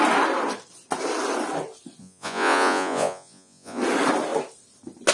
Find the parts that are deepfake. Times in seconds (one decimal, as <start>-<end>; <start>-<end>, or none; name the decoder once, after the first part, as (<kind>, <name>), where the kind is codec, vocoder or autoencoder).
2.0-3.8 (vocoder, Vocos)